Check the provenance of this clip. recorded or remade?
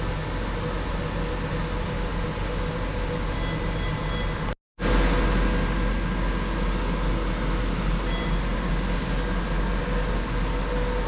recorded